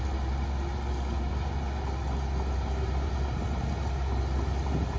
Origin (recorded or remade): recorded